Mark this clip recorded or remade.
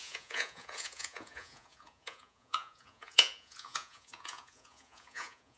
remade